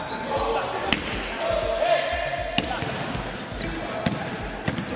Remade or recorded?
recorded